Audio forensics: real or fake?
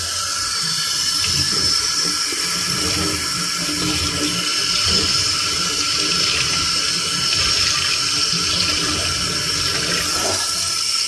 real